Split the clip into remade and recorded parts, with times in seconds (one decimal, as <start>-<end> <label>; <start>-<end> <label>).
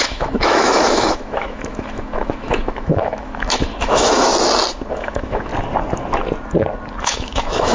0.0-4.3 remade; 4.3-4.9 recorded; 4.9-5.5 remade; 5.5-7.0 recorded; 7.0-7.7 remade